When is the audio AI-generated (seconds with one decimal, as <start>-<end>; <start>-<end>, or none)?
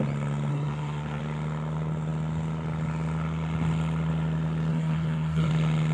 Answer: 0.5-1.2; 4.7-5.5